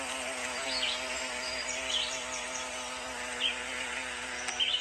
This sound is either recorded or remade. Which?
recorded